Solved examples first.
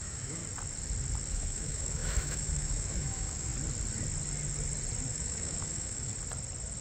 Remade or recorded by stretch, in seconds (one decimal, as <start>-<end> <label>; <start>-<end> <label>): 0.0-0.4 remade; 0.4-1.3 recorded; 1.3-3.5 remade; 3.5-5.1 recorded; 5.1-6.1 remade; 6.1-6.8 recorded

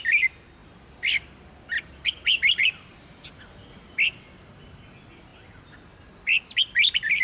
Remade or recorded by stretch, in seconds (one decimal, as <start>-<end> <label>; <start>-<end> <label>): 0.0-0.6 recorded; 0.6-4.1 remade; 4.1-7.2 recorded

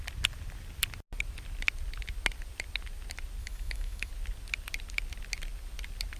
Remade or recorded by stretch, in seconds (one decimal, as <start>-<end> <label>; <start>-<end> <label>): 0.0-3.4 recorded; 3.4-4.1 remade; 4.1-6.2 recorded

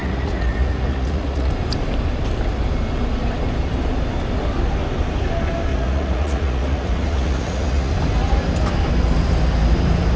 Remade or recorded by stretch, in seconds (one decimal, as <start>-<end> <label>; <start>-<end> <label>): 0.0-1.5 remade; 1.5-5.7 recorded; 5.7-7.9 remade; 7.9-10.2 recorded

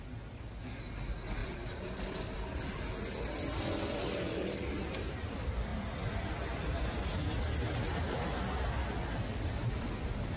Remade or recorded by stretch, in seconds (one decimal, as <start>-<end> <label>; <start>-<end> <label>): 0.0-10.4 recorded

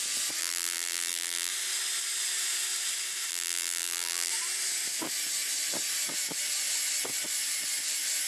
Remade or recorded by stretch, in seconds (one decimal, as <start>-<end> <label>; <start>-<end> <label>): 0.0-0.4 recorded; 0.4-1.5 remade; 1.5-3.3 recorded; 3.3-4.3 remade; 4.3-8.3 recorded

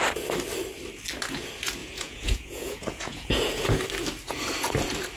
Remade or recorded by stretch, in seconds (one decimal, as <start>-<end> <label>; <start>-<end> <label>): 0.0-1.8 recorded; 1.8-3.8 remade; 3.8-5.2 recorded

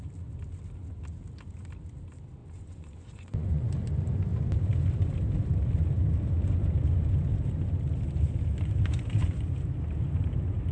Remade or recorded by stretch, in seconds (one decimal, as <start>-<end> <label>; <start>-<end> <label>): 0.0-2.4 recorded; 2.4-3.7 remade; 3.7-10.7 recorded